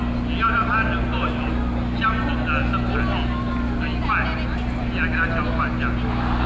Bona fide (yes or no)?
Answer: yes